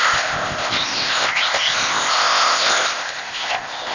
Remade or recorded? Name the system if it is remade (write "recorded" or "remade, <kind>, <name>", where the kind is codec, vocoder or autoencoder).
remade, codec, ZipCodec